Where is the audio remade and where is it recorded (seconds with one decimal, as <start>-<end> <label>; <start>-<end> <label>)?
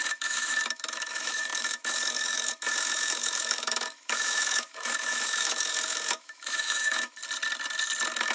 0.0-7.2 remade; 7.2-8.3 recorded